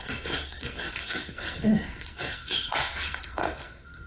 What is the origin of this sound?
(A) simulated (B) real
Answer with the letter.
A